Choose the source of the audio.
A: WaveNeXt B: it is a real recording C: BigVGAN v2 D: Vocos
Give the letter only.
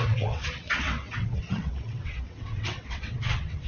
A